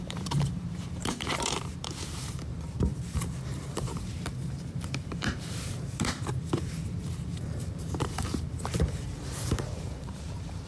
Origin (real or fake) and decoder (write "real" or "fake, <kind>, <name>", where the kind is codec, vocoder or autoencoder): fake, vocoder, BigVGAN v2